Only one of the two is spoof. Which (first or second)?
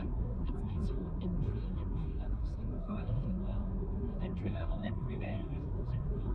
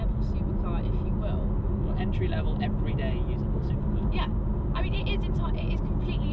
first